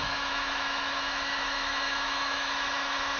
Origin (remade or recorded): remade